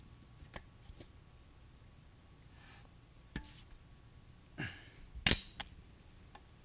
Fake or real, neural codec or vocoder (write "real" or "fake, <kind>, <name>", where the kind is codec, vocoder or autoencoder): real